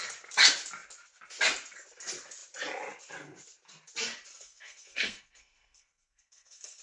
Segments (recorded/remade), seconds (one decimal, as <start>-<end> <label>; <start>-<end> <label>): 0.0-4.3 recorded; 4.3-6.8 remade